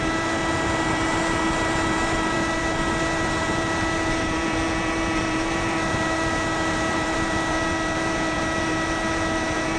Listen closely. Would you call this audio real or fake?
fake